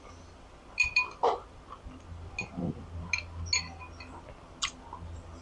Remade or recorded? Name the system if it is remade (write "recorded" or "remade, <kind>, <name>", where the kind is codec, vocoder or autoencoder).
recorded